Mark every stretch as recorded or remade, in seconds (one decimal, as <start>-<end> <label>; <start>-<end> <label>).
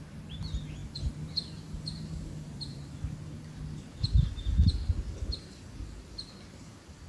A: 0.0-7.1 recorded